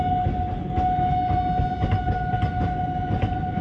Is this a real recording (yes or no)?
yes